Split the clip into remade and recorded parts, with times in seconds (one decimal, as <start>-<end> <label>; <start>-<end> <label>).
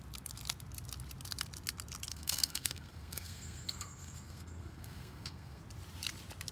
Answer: 0.0-2.1 recorded; 2.1-5.6 remade; 5.6-6.5 recorded